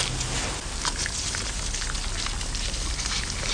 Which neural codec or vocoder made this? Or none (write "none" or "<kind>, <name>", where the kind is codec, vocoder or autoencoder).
none